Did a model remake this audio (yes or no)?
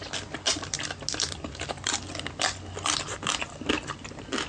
no